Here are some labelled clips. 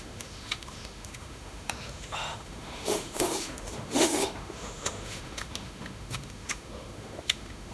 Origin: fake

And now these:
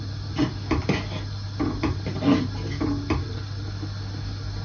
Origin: real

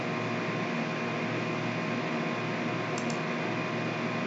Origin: real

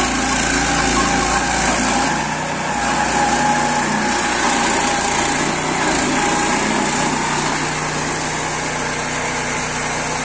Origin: real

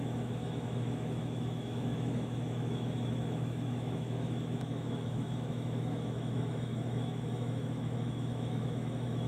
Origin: fake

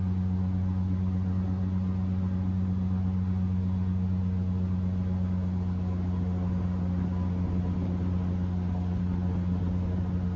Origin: real